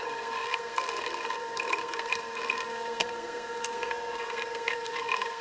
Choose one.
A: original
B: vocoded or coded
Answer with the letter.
B